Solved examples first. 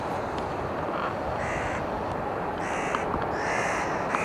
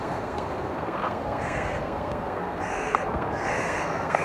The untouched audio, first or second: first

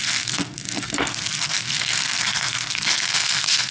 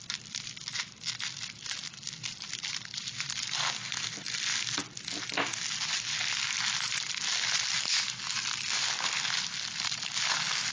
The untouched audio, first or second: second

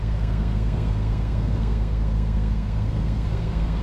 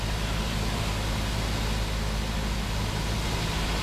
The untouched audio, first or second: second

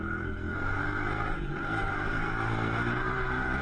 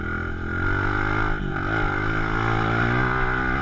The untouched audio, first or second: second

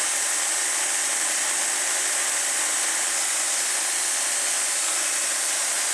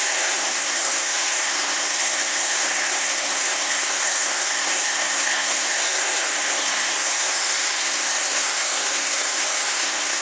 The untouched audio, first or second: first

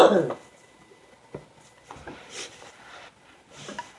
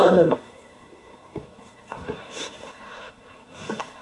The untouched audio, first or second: first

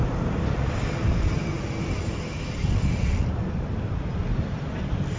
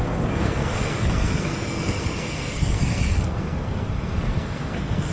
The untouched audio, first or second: first